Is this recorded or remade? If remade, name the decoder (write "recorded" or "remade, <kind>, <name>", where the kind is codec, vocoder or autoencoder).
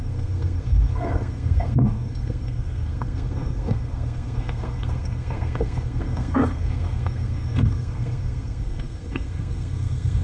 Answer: remade, codec, SNAC